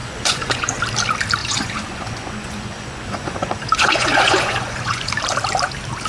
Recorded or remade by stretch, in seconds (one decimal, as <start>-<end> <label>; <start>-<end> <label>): 0.0-0.8 remade; 0.8-1.4 recorded; 1.4-5.1 remade; 5.1-6.1 recorded